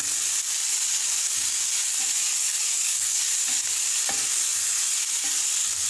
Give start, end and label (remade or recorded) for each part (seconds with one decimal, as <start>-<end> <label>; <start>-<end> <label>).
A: 0.0-1.0 recorded; 1.0-1.6 remade; 1.6-2.4 recorded; 2.4-3.2 remade; 3.2-5.9 recorded